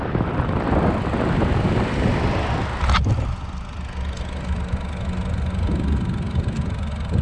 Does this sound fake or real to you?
real